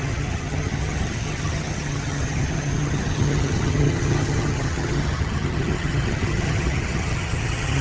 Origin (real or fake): fake